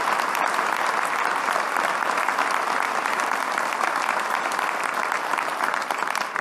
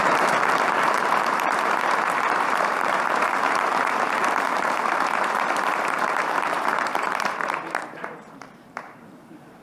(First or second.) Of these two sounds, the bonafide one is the first